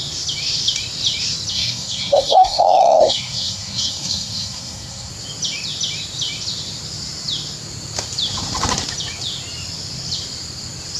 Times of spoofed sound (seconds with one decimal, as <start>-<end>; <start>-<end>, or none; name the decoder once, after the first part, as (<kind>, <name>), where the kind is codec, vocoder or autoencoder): 1.5-5.1 (codec, SNAC)